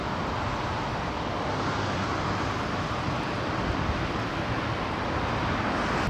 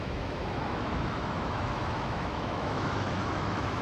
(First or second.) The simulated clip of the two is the second